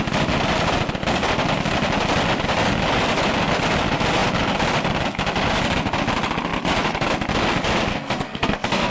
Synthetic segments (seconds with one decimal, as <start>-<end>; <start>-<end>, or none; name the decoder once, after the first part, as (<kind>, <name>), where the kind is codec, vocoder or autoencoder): 7.9-8.9 (codec, SNAC)

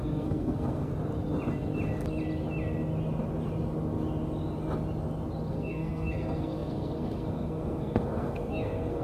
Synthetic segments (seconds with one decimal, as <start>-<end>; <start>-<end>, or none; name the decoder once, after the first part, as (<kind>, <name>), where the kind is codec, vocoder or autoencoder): 0.0-0.9 (codec, SNAC); 5.5-9.0

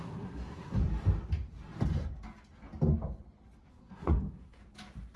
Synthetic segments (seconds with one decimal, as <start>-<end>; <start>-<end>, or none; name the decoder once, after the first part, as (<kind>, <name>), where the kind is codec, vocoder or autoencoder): 0.0-0.8 (codec, SNAC); 3.7-4.6

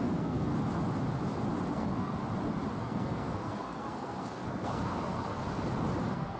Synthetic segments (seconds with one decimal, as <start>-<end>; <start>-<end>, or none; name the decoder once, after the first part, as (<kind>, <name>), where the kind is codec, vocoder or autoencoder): 0.0-0.5 (codec, SNAC); 1.7-2.2; 2.8-5.4; 6.0-6.4

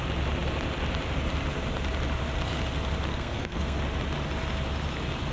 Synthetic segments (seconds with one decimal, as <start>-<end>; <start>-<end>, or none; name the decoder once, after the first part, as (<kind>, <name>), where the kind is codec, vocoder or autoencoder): 3.1-3.8 (codec, SNAC)

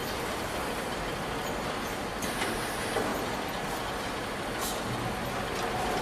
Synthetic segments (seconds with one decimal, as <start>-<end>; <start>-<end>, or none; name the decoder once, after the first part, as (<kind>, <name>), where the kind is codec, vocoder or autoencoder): none